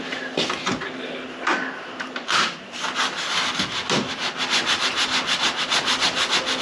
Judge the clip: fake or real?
real